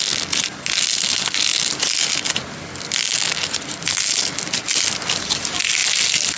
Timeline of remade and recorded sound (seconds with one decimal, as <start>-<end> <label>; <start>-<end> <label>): 0.0-6.4 recorded